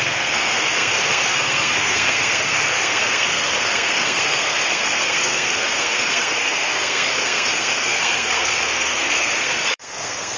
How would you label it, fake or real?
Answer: fake